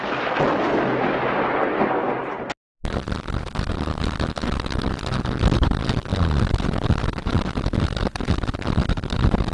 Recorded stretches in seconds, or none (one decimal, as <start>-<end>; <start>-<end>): 0.0-9.5